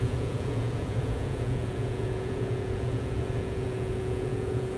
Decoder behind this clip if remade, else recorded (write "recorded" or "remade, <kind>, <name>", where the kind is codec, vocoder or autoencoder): remade, vocoder, Vocos